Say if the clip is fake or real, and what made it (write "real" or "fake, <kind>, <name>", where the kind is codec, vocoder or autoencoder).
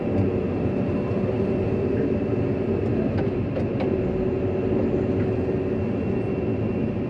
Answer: real